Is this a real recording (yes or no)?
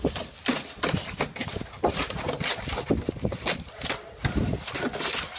yes